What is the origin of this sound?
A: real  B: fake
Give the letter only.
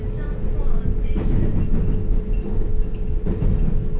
A